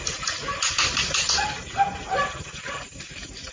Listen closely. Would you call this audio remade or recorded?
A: recorded